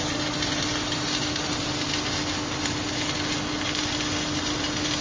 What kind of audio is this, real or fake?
real